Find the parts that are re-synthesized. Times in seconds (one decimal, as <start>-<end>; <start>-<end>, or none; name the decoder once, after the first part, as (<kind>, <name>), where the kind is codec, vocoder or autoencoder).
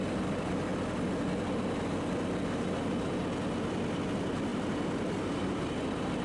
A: 4.5-6.2 (vocoder, BigVGAN v2)